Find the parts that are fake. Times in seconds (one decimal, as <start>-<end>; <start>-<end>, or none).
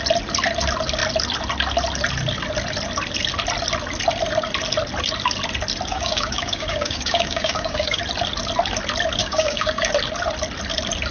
5.9-8.0; 9.2-9.9